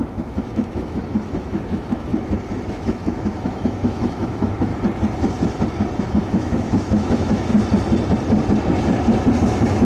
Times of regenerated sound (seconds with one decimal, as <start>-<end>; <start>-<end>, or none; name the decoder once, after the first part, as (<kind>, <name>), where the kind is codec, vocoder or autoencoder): 0.0-2.1 (autoencoder, DAC-VAE); 2.7-4.7; 6.0-7.5; 9.4-9.8